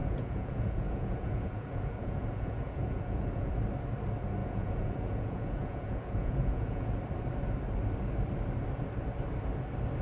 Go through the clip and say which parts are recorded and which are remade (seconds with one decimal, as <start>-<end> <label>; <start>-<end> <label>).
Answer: 0.0-3.5 remade; 3.5-4.4 recorded; 4.4-7.0 remade; 7.0-10.0 recorded